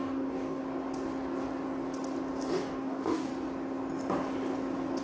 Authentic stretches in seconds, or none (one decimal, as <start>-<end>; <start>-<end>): 0.6-2.5; 3.3-5.0